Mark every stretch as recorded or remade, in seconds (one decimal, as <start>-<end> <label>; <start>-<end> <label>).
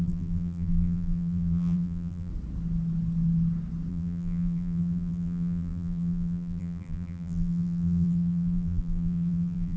0.0-2.3 remade; 2.3-3.9 recorded; 3.9-9.8 remade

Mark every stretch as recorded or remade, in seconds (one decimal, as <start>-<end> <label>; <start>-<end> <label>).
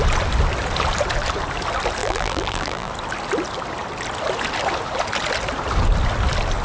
0.0-2.0 recorded; 2.0-2.9 remade; 2.9-6.6 recorded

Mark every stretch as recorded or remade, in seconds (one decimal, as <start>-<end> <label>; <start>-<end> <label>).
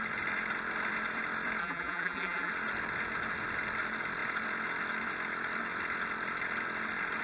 0.0-1.6 recorded; 1.6-2.5 remade; 2.5-7.2 recorded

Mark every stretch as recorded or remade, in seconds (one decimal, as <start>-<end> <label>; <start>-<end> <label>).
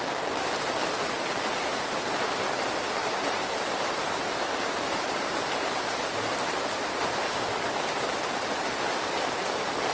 0.0-1.6 recorded; 1.6-2.3 remade; 2.3-3.0 recorded; 3.0-7.2 remade; 7.2-9.9 recorded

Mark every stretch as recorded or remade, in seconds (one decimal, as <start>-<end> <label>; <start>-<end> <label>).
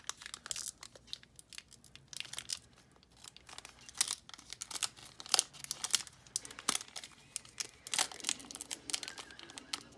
0.0-8.4 recorded; 8.4-9.6 remade; 9.6-10.0 recorded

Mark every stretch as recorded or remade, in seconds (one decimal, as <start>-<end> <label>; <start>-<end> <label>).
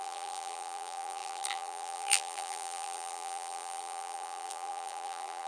0.0-5.5 remade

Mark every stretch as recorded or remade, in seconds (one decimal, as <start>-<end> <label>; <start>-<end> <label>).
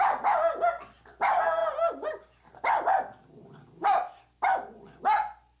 0.0-1.6 recorded; 1.6-5.0 remade; 5.0-5.6 recorded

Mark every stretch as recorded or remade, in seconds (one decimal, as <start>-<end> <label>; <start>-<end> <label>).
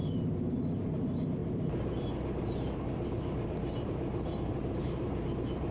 0.0-5.7 remade